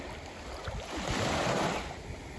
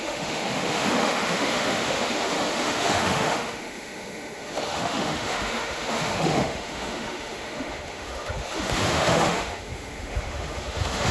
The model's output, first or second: second